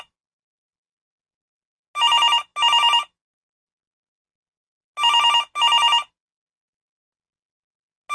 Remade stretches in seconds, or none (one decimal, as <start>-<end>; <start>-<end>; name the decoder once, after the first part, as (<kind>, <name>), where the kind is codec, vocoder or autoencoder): none